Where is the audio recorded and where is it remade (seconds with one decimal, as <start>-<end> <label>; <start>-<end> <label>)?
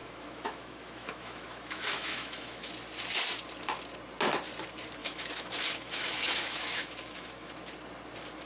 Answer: 0.0-2.7 remade; 2.7-5.0 recorded; 5.0-7.5 remade; 7.5-8.5 recorded